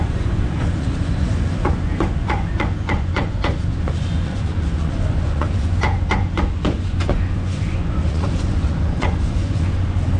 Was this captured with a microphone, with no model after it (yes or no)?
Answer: no